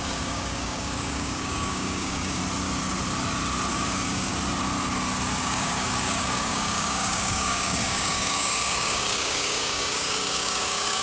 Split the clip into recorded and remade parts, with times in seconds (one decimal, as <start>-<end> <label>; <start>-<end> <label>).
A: 0.0-2.4 remade; 2.4-3.7 recorded; 3.7-4.3 remade; 4.3-5.4 recorded; 5.4-11.0 remade